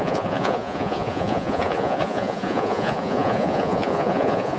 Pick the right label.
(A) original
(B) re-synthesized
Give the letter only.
B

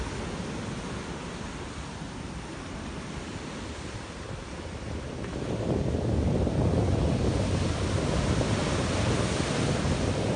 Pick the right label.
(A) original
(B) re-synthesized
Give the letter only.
A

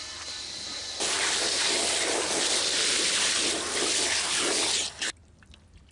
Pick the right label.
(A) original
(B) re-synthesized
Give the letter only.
A